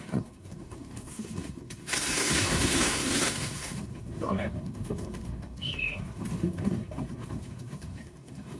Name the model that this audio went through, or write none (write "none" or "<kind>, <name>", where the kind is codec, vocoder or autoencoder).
codec, SNAC